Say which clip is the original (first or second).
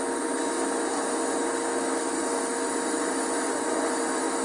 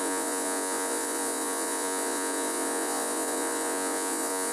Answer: first